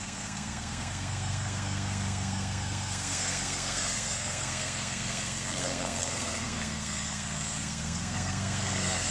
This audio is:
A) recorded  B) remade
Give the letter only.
B